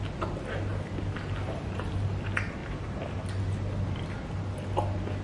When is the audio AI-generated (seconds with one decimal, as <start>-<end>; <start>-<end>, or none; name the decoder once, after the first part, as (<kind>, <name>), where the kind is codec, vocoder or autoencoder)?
0.7-2.1 (vocoder, BigVGAN v2)

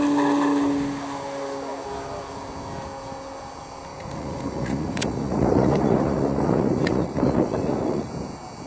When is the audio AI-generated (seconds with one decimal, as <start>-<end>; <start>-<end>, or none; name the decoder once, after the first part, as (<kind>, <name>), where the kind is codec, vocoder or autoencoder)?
3.9-8.1 (vocoder, Vocos)

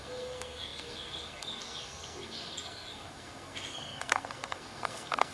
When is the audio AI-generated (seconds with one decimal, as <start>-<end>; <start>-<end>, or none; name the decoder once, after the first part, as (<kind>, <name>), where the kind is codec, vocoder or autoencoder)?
0.0-5.3 (codec, SNAC)

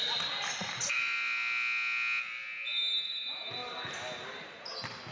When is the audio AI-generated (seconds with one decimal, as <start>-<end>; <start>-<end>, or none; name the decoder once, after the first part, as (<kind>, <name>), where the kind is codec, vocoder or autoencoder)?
none

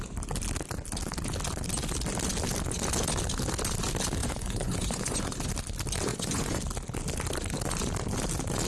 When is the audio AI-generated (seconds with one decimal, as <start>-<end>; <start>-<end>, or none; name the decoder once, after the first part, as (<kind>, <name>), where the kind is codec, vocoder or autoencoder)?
4.2-5.5 (vocoder, Vocos); 6.1-6.6

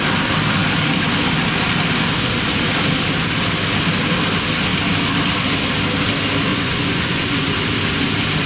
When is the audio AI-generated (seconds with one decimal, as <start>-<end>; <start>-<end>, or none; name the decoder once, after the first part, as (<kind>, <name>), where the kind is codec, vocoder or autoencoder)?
6.5-7.5 (vocoder, Vocos)

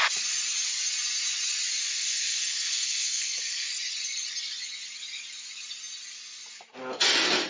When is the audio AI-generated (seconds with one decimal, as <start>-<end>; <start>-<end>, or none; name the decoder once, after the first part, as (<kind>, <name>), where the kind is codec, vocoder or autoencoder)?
1.8-3.7 (codec, SNAC)

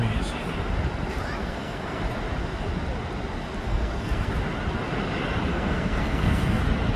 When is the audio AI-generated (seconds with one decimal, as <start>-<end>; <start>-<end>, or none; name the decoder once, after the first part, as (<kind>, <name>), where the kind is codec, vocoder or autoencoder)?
1.4-2.0 (codec, SNAC); 3.7-4.3; 5.5-6.6